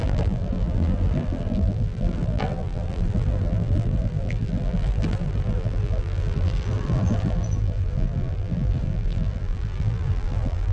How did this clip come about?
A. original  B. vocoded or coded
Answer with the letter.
B